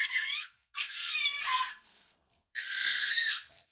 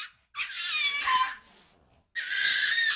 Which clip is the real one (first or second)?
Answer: second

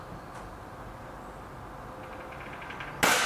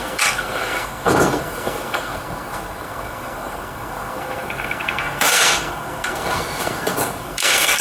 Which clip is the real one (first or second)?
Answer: first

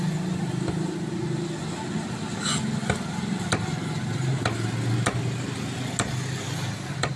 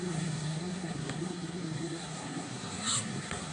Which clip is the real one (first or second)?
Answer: first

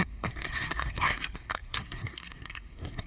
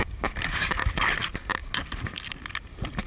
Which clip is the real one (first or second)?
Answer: second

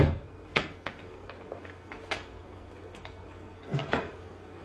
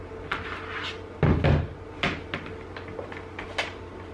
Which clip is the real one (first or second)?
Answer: second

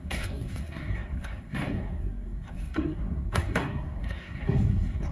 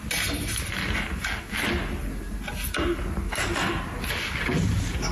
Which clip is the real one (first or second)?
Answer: second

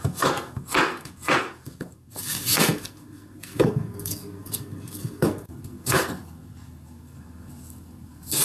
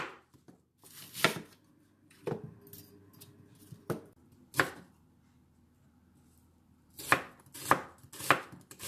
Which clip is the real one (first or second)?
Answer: second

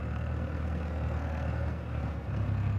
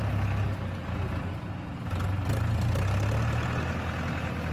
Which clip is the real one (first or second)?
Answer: second